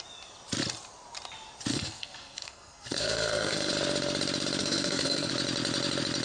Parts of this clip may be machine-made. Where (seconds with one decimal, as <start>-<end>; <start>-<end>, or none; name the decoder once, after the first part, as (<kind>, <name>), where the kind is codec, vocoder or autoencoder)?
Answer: 1.7-3.7 (codec, SNAC); 4.6-5.3